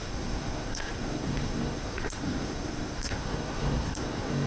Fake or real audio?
fake